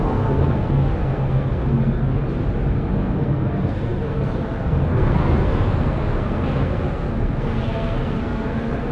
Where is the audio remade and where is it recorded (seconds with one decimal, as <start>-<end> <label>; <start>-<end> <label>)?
0.0-2.2 remade; 2.2-2.7 recorded; 2.7-8.9 remade